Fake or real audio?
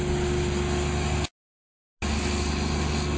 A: real